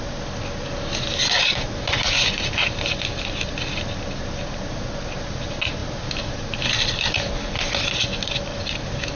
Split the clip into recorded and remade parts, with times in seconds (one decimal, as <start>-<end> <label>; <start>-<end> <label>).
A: 0.0-9.2 recorded